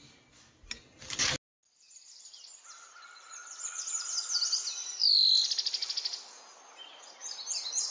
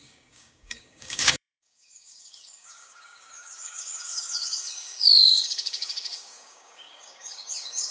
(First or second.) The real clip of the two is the first